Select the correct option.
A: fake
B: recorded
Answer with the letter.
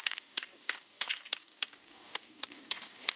A